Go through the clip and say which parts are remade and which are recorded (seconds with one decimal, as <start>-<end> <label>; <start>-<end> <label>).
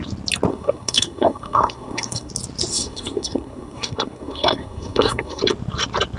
0.0-0.5 recorded; 0.5-2.3 remade; 2.3-2.7 recorded; 2.7-5.4 remade; 5.4-6.2 recorded